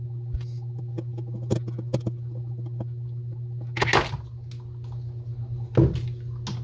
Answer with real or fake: real